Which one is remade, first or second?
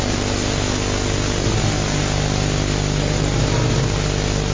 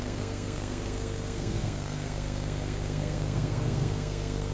second